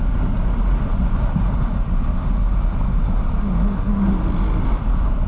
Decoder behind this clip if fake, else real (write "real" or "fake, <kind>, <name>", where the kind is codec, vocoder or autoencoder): real